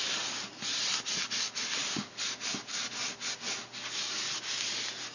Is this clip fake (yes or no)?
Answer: no